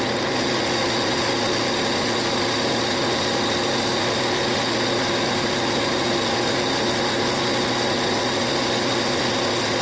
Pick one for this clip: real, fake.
real